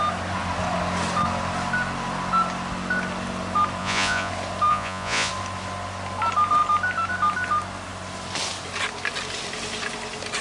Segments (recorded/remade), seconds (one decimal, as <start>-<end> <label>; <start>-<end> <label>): 0.0-3.8 recorded; 3.8-4.3 remade; 4.3-4.7 recorded; 4.7-5.3 remade; 5.3-10.4 recorded